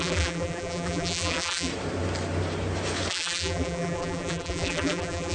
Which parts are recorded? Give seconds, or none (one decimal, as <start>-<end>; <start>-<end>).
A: 1.7-3.1